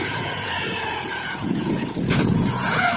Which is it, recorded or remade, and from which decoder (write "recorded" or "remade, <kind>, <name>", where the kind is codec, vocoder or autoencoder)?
remade, vocoder, Vocos